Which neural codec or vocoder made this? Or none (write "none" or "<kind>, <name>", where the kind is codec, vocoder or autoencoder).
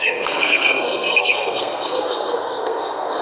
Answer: codec, SNAC